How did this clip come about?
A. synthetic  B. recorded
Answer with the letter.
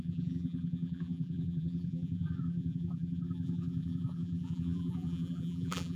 A